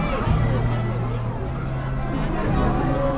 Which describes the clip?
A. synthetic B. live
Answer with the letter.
B